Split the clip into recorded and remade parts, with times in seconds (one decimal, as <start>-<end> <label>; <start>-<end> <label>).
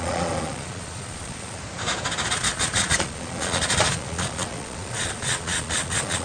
0.0-1.6 remade; 1.6-2.3 recorded; 2.3-6.2 remade